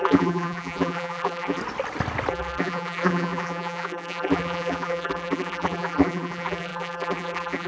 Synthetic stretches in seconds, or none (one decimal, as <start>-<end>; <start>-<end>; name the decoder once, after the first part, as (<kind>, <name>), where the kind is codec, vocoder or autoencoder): 0.0-1.6 (vocoder, BigVGAN v2); 2.3-7.7